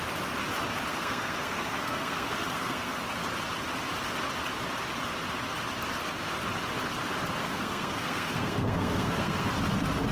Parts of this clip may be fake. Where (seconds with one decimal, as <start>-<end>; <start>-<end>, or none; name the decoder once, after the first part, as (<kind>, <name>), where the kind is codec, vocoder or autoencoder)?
0.9-3.0 (codec, SNAC); 7.4-9.5